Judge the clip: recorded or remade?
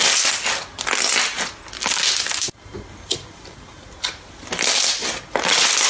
recorded